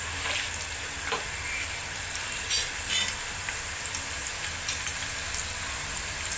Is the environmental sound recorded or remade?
recorded